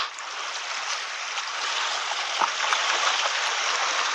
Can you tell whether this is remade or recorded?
recorded